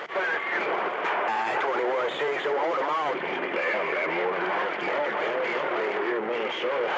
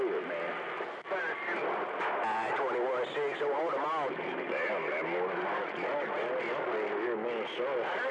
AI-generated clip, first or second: first